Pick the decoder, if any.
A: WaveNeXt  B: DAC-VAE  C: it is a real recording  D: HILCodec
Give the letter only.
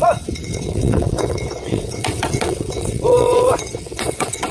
A